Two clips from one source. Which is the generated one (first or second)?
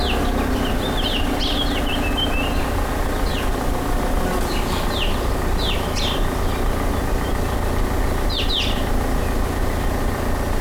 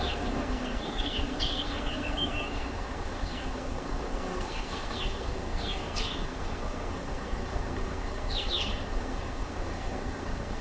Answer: second